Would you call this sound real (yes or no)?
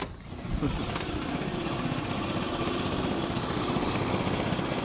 yes